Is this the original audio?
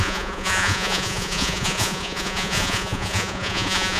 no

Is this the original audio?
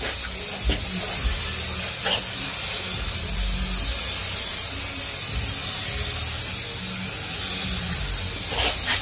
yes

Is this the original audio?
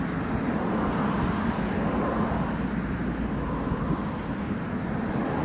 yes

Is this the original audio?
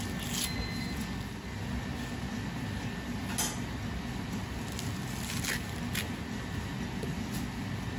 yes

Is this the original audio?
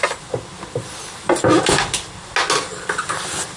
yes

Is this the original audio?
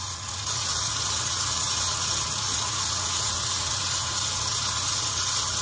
no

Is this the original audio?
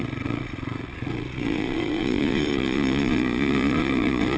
no